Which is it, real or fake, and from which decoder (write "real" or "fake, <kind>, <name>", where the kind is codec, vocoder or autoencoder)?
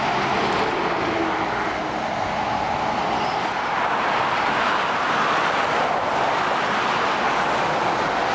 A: real